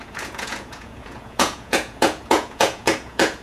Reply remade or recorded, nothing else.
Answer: remade